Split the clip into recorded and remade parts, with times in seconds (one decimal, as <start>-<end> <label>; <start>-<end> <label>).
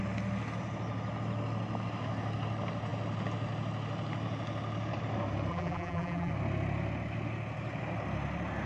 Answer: 0.0-5.5 recorded; 5.5-6.3 remade; 6.3-8.7 recorded